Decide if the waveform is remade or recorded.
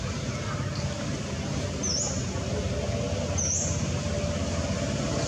recorded